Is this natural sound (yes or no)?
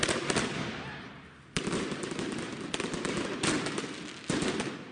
yes